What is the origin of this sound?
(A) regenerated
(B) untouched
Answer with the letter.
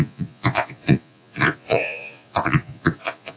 A